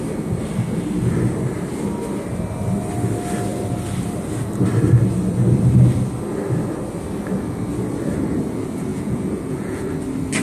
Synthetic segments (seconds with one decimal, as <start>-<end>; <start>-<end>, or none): 8.9-9.8